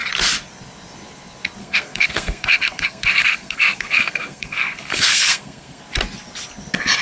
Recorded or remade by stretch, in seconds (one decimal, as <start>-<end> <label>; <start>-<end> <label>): 0.0-1.6 recorded; 1.6-5.8 remade; 5.8-7.0 recorded